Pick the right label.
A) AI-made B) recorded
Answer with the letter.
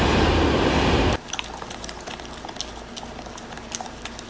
B